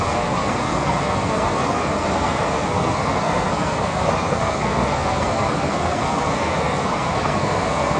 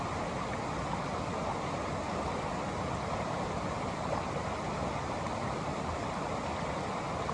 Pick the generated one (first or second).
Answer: first